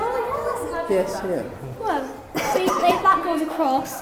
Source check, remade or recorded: recorded